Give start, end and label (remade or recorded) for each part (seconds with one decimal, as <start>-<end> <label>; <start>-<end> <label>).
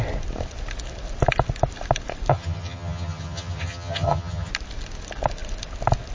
0.0-2.3 recorded; 2.3-4.5 remade; 4.5-6.1 recorded